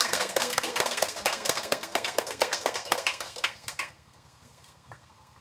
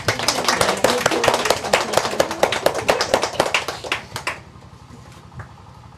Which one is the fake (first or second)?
first